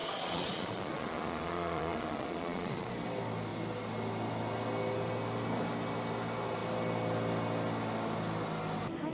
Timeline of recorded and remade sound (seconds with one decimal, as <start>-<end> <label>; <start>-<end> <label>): 0.0-2.9 remade; 2.9-9.1 recorded